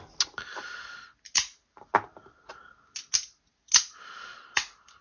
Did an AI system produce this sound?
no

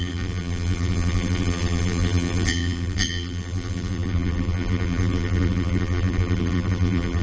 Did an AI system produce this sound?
yes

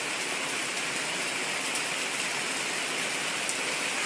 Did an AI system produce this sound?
no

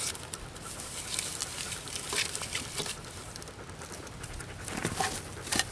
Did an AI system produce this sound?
no